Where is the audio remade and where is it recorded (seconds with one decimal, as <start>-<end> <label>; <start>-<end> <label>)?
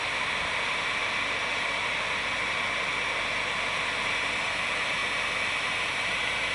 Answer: 0.0-1.0 remade; 1.0-4.3 recorded; 4.3-5.0 remade; 5.0-5.6 recorded; 5.6-6.5 remade